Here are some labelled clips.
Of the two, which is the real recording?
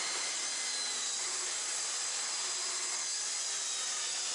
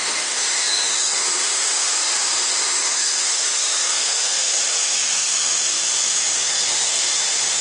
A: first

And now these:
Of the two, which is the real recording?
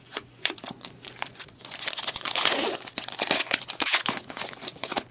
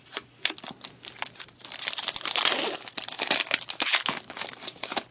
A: second